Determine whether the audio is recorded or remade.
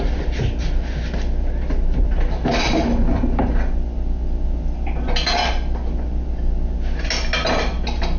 recorded